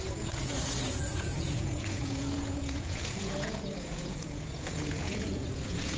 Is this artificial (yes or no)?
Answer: yes